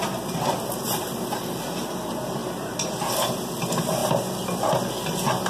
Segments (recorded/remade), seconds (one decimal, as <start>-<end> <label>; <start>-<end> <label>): 0.0-5.5 recorded

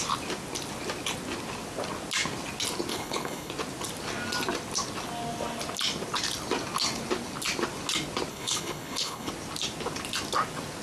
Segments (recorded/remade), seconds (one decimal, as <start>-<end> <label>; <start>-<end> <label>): 0.0-2.9 recorded; 2.9-3.5 remade; 3.5-8.3 recorded; 8.3-9.3 remade; 9.3-10.8 recorded

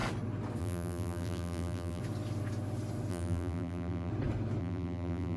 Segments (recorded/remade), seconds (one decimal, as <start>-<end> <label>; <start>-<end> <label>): 0.0-0.6 recorded; 0.6-2.0 remade; 2.0-3.1 recorded; 3.1-4.1 remade; 4.1-4.6 recorded; 4.6-5.4 remade

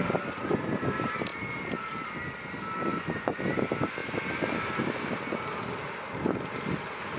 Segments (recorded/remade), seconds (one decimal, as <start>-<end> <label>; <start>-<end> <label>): 0.0-2.9 recorded; 2.9-3.4 remade; 3.4-7.2 recorded

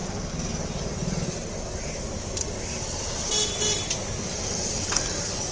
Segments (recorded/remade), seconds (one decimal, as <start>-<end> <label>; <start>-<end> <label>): 0.0-5.5 recorded

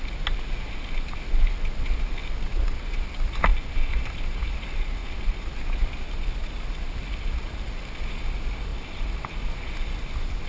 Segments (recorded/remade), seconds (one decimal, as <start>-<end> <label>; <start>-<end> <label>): 0.0-2.2 recorded; 2.2-2.7 remade; 2.7-10.5 recorded

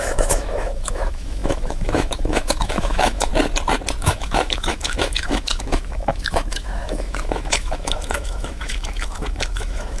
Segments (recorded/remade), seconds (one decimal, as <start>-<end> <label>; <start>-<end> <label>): 0.0-3.3 remade; 3.3-4.0 recorded; 4.0-10.0 remade

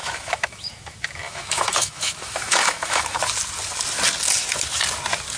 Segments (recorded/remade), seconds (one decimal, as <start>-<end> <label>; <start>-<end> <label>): 0.0-3.2 remade; 3.2-5.4 recorded